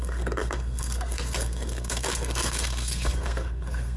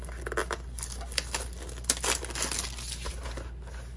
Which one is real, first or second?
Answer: second